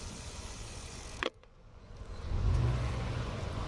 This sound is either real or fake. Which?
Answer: fake